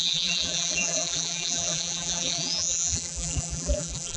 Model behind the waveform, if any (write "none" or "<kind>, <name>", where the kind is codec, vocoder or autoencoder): vocoder, BigVGAN v2